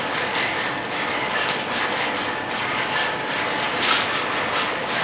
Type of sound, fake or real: real